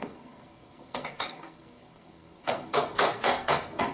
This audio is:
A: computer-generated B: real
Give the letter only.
A